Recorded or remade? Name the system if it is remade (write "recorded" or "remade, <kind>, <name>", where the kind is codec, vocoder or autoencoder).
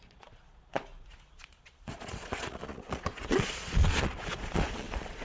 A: remade, vocoder, Vocos